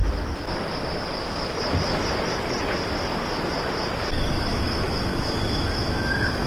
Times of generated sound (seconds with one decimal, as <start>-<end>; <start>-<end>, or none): 4.5-6.5